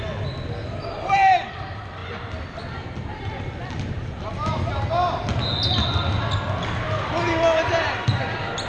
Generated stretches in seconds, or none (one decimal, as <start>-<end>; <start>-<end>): none